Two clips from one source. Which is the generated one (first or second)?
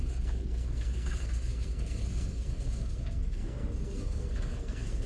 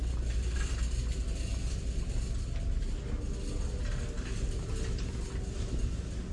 first